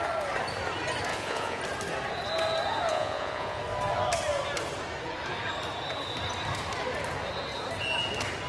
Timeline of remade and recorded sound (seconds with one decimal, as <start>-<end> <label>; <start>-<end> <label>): 0.0-1.1 recorded; 1.1-1.6 remade; 1.6-2.9 recorded; 2.9-3.6 remade; 3.6-8.5 recorded